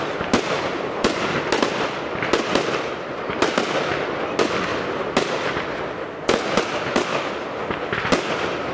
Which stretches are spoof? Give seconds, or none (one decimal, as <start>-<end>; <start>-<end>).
none